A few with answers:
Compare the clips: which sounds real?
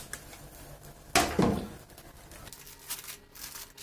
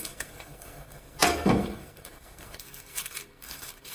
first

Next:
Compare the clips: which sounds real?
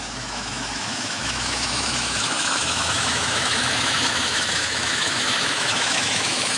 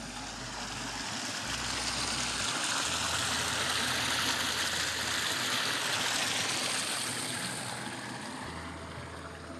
second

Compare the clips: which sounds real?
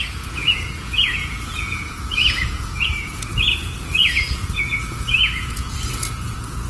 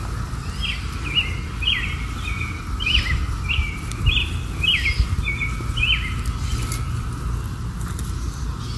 second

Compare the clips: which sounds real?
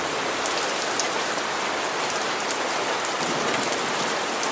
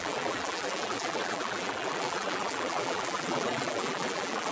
first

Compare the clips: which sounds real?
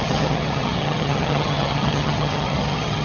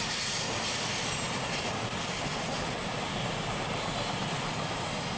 second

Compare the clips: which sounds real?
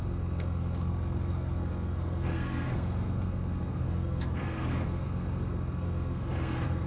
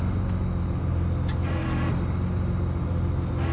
second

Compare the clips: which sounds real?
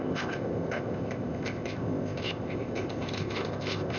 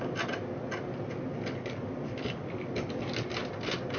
second